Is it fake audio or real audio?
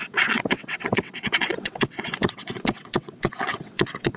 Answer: fake